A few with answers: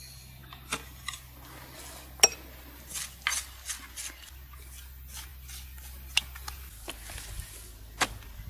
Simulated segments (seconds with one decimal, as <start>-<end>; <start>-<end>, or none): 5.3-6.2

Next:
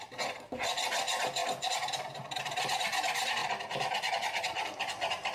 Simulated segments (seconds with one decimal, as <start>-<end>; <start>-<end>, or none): none

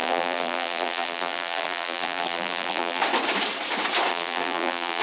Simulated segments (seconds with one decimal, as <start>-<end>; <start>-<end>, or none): 0.0-3.0; 4.1-5.0